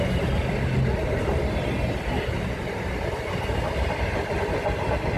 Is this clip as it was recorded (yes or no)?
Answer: yes